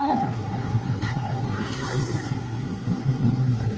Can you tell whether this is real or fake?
fake